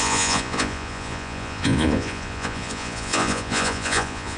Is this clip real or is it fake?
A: fake